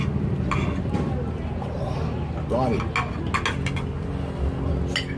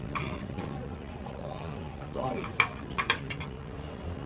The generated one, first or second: second